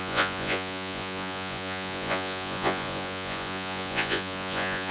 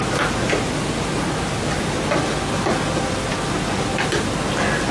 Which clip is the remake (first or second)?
first